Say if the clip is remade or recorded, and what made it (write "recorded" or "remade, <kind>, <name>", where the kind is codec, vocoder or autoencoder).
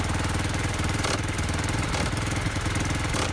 remade, vocoder, BigVGAN v2